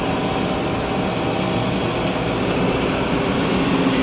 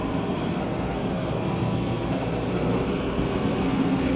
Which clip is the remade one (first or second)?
second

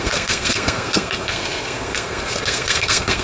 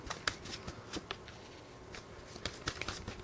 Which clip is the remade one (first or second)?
first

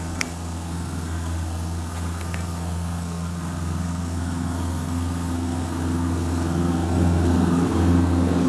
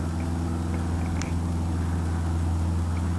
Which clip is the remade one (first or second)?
first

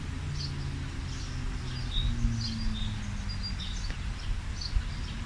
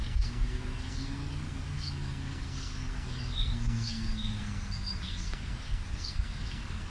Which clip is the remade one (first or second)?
second